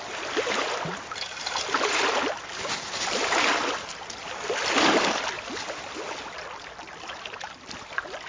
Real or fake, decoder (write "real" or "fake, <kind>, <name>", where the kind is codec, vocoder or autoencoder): real